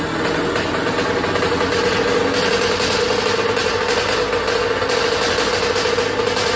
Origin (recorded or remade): recorded